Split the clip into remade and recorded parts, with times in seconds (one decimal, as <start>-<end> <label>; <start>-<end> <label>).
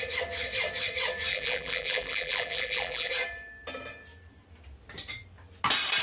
0.0-1.3 recorded; 1.3-3.1 remade; 3.1-6.0 recorded